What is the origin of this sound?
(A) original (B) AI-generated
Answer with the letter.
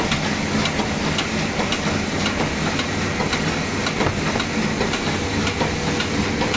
A